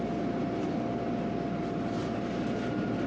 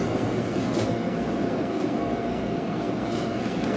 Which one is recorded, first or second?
first